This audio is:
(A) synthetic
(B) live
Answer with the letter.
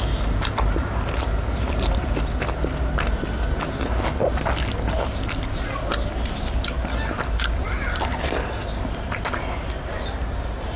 B